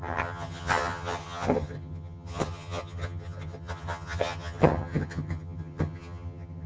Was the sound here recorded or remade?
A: remade